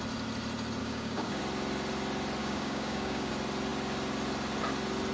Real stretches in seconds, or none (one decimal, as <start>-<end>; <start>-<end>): 0.0-0.8; 1.4-2.4; 3.3-5.1